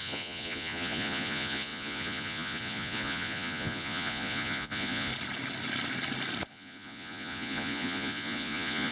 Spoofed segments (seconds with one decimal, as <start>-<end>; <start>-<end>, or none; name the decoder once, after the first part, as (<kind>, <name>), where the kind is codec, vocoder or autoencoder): 0.0-5.1 (vocoder, Vocos); 6.5-8.9

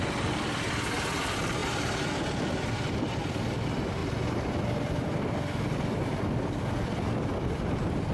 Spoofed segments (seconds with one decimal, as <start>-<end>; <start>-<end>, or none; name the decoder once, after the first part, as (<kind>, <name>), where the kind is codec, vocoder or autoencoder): none

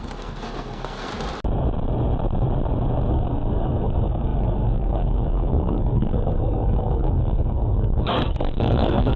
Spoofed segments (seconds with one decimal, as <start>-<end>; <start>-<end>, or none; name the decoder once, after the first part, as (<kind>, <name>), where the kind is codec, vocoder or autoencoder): 0.0-1.1 (codec, SNAC); 3.1-9.2

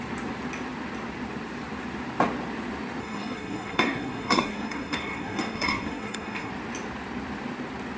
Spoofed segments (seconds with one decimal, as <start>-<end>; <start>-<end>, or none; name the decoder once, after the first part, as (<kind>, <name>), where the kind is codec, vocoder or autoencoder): 3.0-6.5 (codec, SNAC)

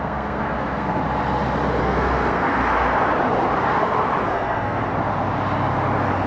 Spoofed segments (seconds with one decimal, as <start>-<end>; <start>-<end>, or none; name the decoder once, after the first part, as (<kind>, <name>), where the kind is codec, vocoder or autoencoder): 0.0-1.0 (codec, SNAC); 1.8-2.6; 4.2-4.8